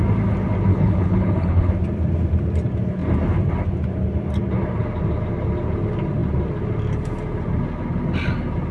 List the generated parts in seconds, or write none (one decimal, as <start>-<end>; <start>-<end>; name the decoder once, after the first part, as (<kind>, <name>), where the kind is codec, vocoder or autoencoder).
0.7-1.7 (codec, HILCodec)

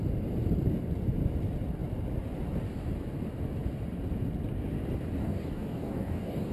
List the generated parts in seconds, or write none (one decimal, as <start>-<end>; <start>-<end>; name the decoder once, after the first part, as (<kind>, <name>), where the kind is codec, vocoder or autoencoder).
5.2-6.5 (codec, DAC)